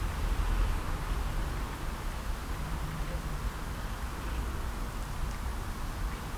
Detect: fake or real real